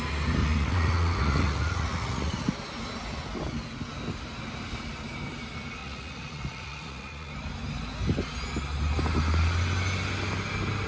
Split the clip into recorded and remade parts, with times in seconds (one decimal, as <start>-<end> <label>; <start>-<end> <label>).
0.0-0.4 recorded; 0.4-2.5 remade; 2.5-5.8 recorded; 5.8-7.3 remade; 7.3-10.9 recorded